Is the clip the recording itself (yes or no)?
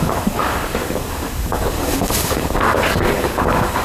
no